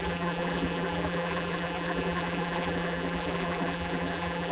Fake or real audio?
fake